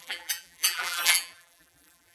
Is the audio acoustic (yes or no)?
no